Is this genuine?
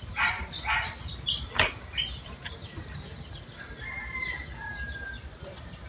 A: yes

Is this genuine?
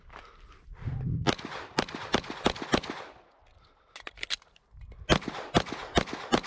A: yes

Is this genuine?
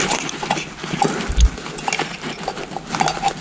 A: yes